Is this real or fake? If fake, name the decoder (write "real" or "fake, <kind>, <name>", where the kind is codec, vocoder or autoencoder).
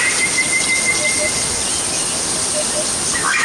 real